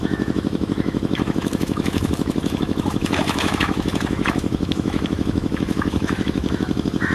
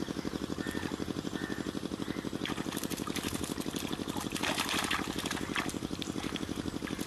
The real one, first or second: second